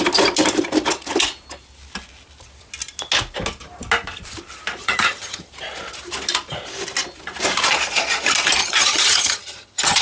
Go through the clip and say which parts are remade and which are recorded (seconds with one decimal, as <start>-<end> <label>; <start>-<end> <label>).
0.0-4.8 recorded; 4.8-5.5 remade; 5.5-8.6 recorded; 8.6-10.0 remade